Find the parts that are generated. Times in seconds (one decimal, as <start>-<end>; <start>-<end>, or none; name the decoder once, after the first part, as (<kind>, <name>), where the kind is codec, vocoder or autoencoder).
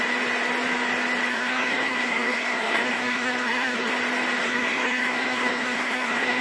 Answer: 1.3-3.9 (codec, SNAC); 4.4-6.4